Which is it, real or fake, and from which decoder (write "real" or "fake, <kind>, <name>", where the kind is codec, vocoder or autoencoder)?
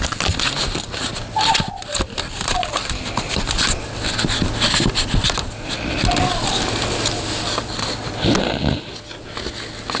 real